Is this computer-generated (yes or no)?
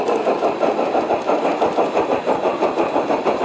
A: no